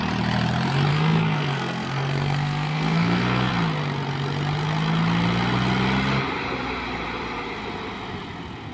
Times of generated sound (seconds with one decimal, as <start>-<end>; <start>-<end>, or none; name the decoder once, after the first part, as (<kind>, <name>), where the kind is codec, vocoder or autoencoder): 0.9-3.5 (codec, SNAC)